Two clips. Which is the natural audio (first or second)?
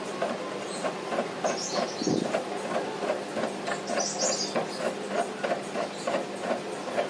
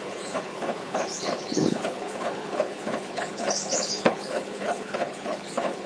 first